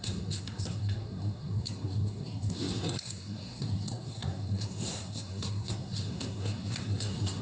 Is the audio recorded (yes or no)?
no